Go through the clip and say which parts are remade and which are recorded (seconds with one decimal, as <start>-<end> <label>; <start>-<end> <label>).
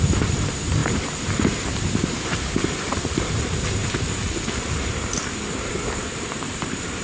0.0-3.8 remade; 3.8-5.7 recorded; 5.7-7.0 remade